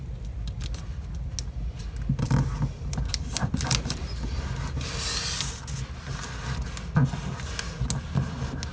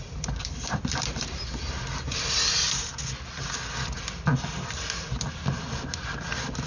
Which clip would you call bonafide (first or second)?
first